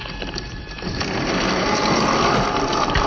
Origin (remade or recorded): remade